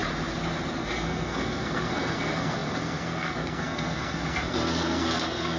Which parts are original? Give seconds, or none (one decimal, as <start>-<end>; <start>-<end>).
0.0-0.8